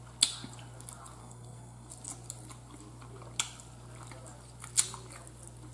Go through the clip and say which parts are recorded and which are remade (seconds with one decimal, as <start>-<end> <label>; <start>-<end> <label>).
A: 0.0-1.2 recorded; 1.2-1.9 remade; 1.9-5.7 recorded